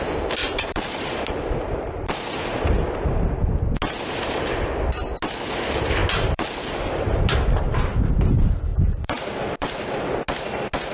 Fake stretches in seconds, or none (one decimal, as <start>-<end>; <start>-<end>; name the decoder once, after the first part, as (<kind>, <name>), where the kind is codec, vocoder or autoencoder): 0.4-2.1 (vocoder, BigVGAN v2); 6.0-7.4; 8.7-10.1